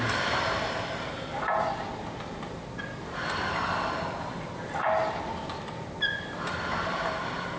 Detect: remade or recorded recorded